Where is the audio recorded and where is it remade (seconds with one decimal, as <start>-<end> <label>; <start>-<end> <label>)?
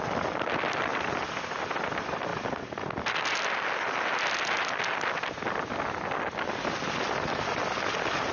0.0-8.3 recorded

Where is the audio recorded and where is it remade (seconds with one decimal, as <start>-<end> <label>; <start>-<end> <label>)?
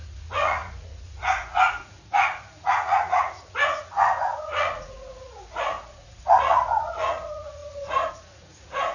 0.0-8.9 remade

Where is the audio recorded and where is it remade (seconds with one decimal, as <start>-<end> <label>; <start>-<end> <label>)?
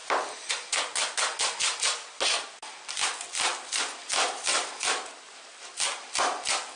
0.0-6.8 recorded